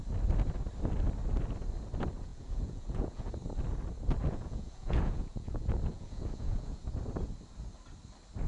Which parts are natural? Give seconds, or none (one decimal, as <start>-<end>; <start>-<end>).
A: 0.0-2.3; 3.3-4.2; 6.8-8.5